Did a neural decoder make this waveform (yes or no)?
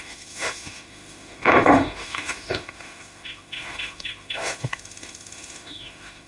yes